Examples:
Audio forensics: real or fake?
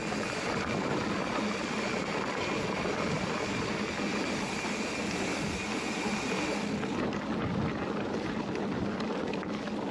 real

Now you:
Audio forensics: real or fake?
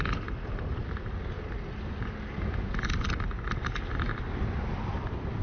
real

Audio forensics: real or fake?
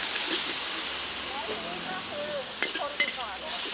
real